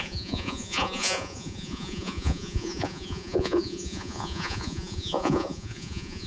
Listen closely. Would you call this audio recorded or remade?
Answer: remade